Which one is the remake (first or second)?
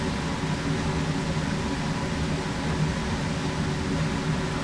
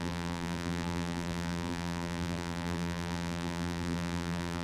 second